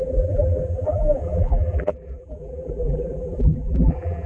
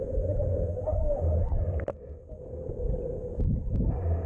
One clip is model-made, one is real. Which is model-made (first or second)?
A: first